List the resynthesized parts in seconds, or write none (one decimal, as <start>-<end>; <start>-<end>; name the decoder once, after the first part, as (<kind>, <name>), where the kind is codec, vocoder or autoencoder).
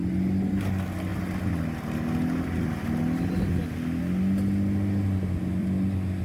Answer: 5.6-6.2 (vocoder, BigVGAN v2)